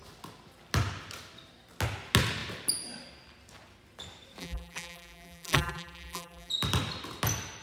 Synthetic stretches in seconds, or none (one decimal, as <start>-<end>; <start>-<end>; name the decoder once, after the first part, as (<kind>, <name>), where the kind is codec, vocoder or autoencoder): 4.4-6.5 (vocoder, BigVGAN v2)